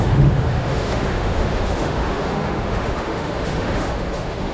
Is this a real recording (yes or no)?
no